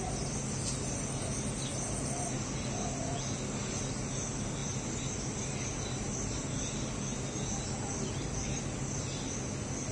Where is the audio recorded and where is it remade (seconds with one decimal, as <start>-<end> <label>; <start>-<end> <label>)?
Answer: 0.0-9.9 recorded